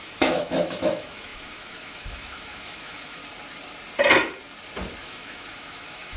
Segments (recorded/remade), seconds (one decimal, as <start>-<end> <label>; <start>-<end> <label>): 0.0-3.2 remade; 3.2-5.0 recorded; 5.0-6.2 remade